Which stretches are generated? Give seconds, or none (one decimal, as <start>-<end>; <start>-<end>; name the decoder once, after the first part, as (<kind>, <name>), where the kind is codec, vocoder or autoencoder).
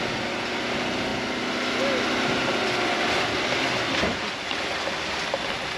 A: none